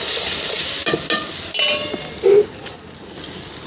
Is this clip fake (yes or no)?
no